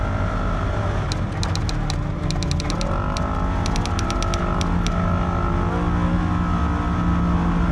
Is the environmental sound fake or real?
real